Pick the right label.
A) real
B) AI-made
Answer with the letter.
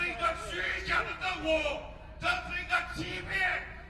A